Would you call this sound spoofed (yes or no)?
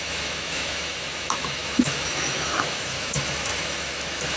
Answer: yes